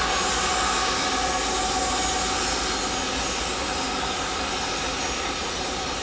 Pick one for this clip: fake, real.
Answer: real